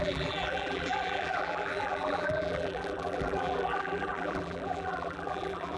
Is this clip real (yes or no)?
no